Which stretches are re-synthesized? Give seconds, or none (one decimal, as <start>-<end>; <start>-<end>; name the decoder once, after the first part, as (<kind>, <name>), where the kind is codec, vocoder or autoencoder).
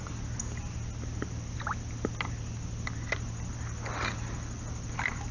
none